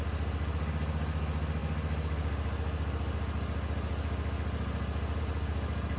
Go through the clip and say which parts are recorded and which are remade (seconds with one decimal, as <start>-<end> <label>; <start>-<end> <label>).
0.0-6.0 recorded